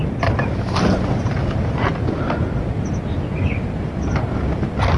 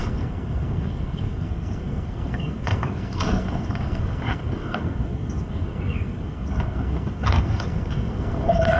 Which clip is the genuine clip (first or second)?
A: first